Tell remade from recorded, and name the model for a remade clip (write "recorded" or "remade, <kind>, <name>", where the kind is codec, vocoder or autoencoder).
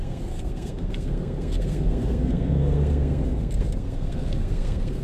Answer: remade, codec, SNAC